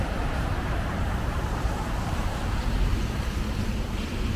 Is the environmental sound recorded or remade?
remade